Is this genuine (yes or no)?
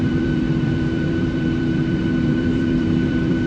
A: no